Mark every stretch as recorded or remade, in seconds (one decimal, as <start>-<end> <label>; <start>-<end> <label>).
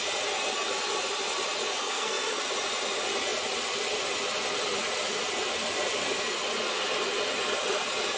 0.0-1.8 recorded; 1.8-2.4 remade; 2.4-8.2 recorded